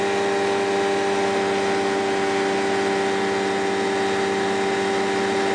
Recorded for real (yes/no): yes